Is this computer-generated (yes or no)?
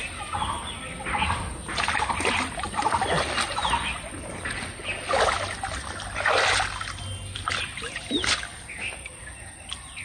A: no